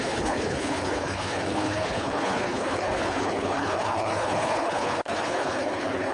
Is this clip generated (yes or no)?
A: yes